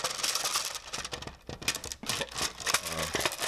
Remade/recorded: recorded